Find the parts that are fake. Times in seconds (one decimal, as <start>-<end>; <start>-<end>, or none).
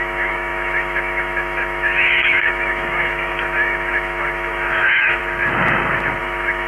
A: 0.0-5.2; 6.2-6.7